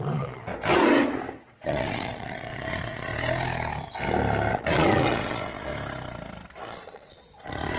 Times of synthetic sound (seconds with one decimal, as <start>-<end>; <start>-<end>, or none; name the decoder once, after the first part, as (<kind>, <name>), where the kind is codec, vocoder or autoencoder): 0.0-0.5 (vocoder, Vocos); 1.4-3.1; 4.5-5.7; 6.6-7.8